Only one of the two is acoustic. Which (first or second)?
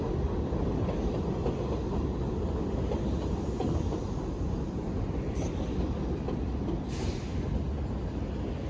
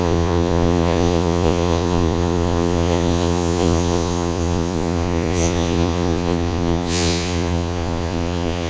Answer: first